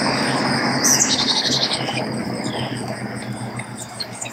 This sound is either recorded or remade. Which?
remade